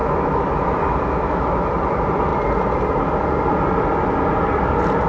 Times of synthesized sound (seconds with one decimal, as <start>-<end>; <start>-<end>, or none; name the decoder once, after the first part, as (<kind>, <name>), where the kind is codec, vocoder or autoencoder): 0.0-1.7 (autoencoder, DAC-VAE)